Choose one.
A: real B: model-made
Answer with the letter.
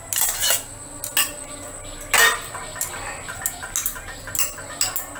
A